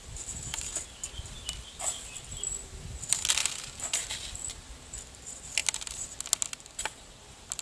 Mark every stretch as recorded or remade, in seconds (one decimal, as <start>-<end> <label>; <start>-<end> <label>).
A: 0.0-3.4 recorded; 3.4-4.1 remade; 4.1-7.6 recorded